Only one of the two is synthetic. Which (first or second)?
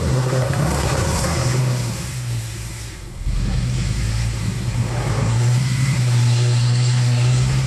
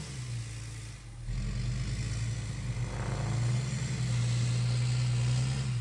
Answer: first